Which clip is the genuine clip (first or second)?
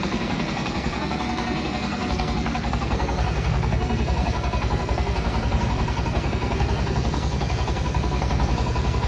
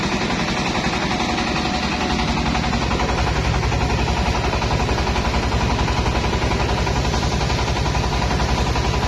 second